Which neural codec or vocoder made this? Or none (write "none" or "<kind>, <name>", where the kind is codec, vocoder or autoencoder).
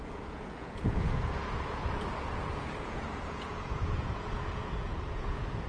vocoder, Vocos